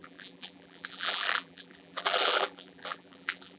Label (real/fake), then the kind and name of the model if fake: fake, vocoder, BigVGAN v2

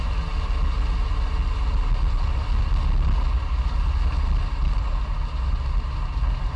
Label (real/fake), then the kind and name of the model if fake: real